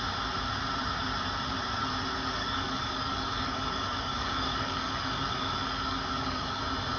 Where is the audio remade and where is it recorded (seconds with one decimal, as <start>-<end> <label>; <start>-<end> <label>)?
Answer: 0.0-2.4 recorded; 2.4-6.6 remade; 6.6-7.0 recorded

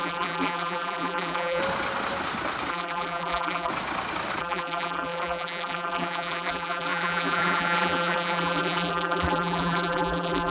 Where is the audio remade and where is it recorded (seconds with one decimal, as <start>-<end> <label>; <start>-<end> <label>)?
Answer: 0.0-1.6 remade; 1.6-2.7 recorded; 2.7-3.7 remade; 3.7-4.4 recorded; 4.4-10.5 remade

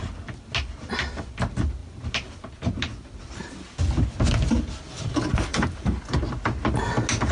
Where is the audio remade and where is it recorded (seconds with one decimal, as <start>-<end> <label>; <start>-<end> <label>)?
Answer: 0.0-5.5 recorded; 5.5-6.0 remade; 6.0-7.3 recorded